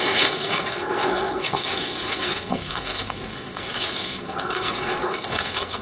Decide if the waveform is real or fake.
fake